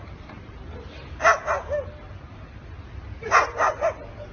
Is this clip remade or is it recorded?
recorded